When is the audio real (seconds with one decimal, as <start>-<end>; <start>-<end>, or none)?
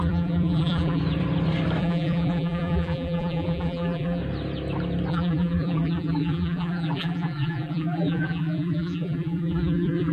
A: 1.0-1.8; 4.2-5.1